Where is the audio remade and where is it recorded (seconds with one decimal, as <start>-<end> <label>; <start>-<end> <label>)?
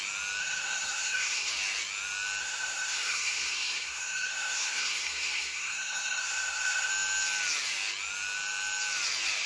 0.0-0.4 recorded; 0.4-1.5 remade; 1.5-2.4 recorded; 2.4-6.9 remade; 6.9-9.5 recorded